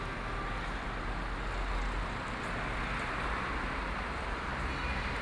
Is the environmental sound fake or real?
real